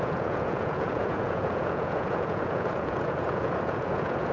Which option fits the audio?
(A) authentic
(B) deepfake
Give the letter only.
B